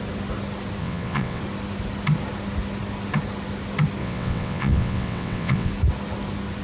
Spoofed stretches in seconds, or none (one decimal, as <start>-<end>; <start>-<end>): 0.8-1.4; 4.0-5.7